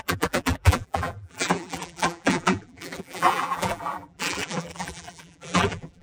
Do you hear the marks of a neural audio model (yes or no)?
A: yes